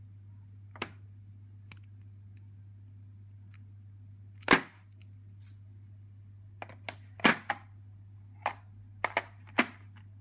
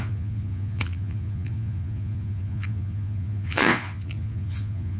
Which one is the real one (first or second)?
first